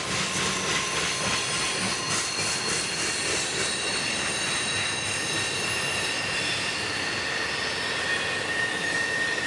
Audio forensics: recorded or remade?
recorded